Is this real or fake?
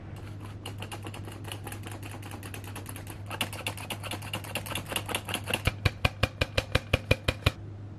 real